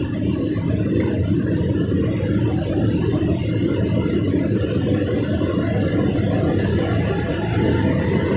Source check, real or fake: real